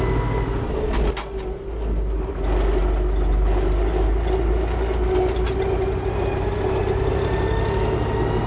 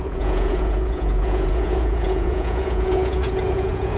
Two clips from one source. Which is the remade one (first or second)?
second